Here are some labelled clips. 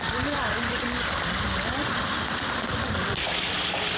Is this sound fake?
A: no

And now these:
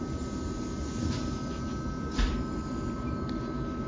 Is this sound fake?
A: no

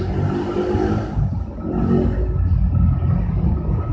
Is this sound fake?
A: no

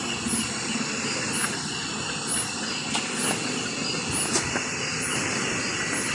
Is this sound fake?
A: no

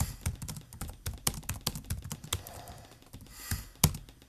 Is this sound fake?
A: no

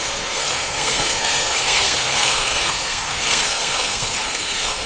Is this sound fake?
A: yes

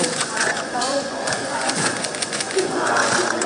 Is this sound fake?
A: yes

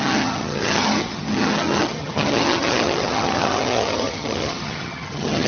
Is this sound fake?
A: yes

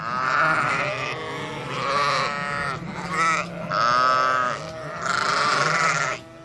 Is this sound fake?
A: no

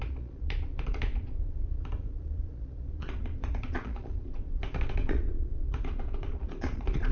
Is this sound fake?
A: yes